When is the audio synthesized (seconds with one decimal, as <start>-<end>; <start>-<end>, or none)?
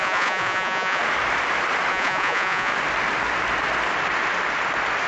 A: 0.0-1.0; 1.9-2.7